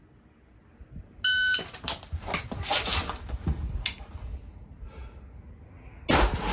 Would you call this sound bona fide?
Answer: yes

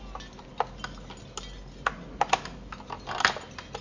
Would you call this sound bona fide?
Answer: yes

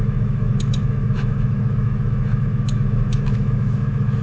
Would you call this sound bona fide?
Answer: no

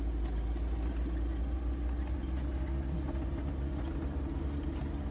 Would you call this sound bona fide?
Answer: yes